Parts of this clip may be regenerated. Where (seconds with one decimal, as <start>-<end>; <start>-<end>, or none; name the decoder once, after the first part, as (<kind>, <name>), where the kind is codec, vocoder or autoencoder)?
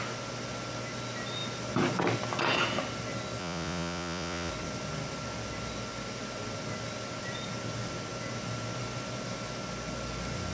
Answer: 3.4-4.5 (vocoder, Vocos)